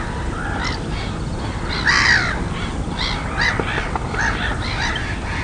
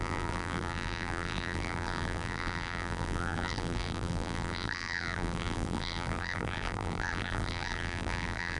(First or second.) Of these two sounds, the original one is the first